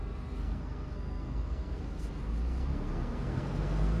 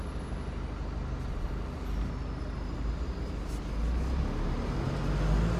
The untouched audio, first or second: second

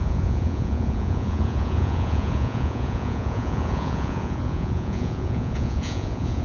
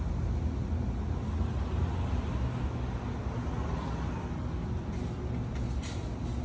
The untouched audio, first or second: second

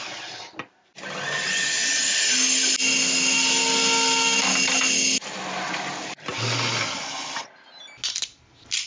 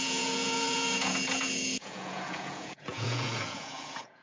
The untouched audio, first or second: first